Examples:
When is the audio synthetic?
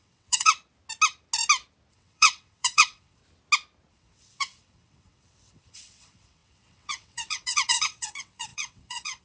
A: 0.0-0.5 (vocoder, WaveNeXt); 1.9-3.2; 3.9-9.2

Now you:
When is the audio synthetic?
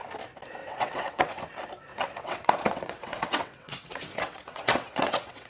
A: 0.6-1.4 (vocoder, WaveNeXt); 1.9-5.5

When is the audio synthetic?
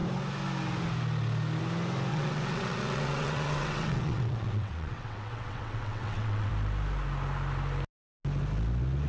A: 2.1-6.5 (vocoder, WaveNeXt)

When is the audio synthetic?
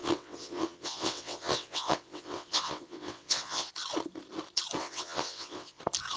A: 0.0-3.7 (vocoder, WaveNeXt); 4.8-5.8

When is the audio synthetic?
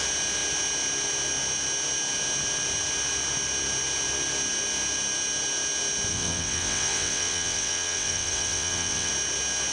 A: 6.1-9.1 (vocoder, WaveNeXt)